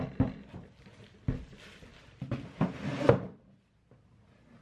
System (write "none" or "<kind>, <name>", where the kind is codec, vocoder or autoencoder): none